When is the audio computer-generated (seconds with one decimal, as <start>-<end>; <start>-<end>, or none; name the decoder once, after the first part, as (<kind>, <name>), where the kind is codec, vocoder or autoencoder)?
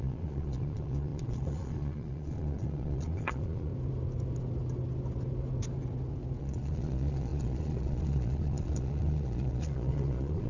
0.0-3.7 (vocoder, Vocos); 6.4-10.5